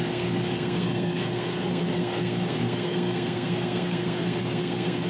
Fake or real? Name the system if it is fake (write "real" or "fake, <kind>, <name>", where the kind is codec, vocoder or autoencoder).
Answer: fake, codec, SNAC